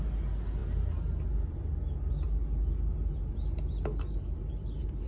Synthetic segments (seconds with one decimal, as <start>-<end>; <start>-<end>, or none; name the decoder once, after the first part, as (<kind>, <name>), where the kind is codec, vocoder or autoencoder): none